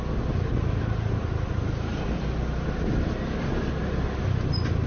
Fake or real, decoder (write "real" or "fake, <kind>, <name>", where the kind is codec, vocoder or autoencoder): real